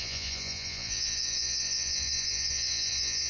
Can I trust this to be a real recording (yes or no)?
no